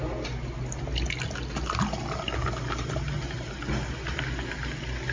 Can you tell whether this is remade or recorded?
recorded